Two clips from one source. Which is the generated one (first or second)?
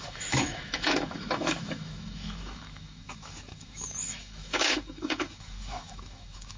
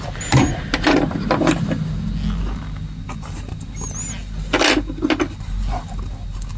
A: first